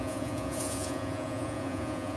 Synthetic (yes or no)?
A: yes